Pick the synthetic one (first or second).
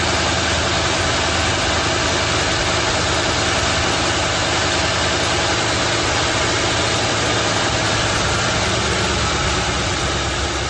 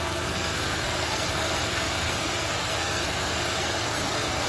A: second